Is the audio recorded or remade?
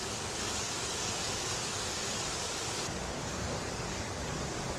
remade